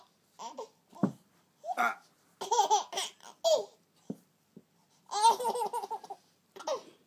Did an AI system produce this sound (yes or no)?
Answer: no